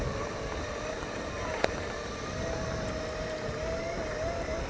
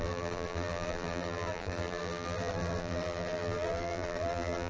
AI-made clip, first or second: second